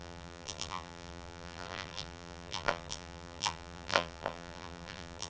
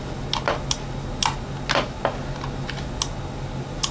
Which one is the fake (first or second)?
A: first